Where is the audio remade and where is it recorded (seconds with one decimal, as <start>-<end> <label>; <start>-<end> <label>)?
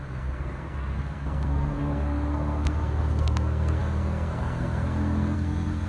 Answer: 0.0-5.9 remade